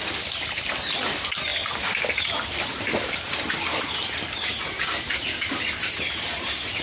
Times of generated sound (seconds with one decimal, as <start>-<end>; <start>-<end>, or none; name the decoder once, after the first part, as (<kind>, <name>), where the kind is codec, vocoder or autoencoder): none